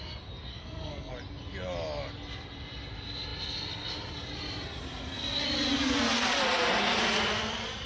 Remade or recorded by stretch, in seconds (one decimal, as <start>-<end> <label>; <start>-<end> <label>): 0.0-0.5 recorded; 0.5-1.1 remade; 1.1-7.9 recorded